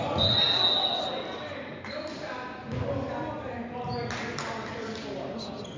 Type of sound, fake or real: real